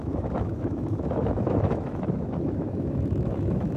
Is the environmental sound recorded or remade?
remade